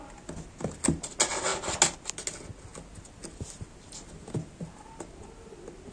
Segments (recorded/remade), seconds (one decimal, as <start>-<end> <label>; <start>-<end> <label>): 0.0-5.9 recorded